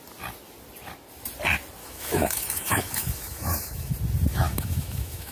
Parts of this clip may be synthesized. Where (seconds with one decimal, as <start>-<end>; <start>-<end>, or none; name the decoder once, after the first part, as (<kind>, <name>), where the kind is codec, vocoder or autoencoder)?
1.8-3.9 (autoencoder, DAC-VAE); 4.3-5.3